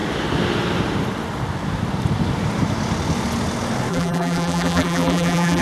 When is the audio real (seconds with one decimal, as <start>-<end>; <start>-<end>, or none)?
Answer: 0.0-3.9